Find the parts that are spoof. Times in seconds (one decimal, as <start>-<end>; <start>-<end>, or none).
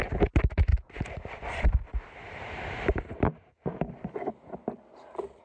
0.7-3.9